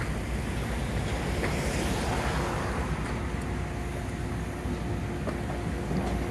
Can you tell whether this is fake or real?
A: real